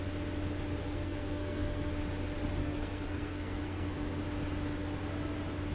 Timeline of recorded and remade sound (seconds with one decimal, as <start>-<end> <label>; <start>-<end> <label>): 0.0-0.8 recorded; 0.8-1.9 remade; 1.9-2.6 recorded; 2.6-4.2 remade; 4.2-5.7 recorded